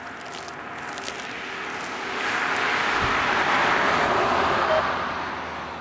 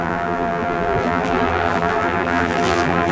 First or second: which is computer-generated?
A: second